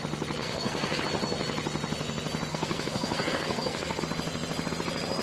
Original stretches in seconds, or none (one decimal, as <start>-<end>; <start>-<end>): 0.0-0.4; 1.0-2.5; 4.0-5.2

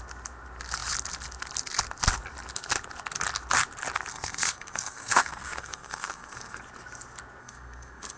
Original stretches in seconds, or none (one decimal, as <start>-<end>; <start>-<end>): 0.0-4.1; 6.6-7.4

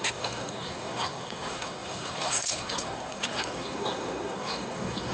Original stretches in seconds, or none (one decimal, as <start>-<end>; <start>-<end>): none

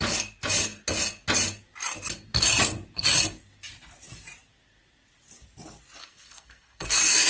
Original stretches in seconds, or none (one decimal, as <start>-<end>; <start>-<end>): 0.0-6.0

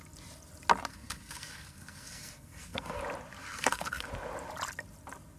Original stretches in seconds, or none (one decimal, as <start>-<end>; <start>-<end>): 0.0-0.9; 3.0-3.4; 4.1-5.4

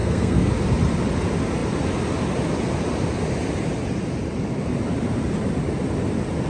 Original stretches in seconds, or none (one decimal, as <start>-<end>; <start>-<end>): 0.5-6.5

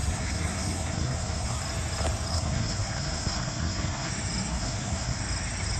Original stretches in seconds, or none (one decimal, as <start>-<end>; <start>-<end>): 1.6-2.3; 4.1-4.5; 5.2-5.8

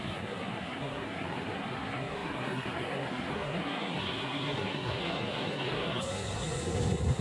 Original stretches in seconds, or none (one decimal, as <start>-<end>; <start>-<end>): none